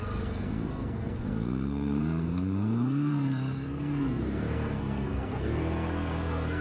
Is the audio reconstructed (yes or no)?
yes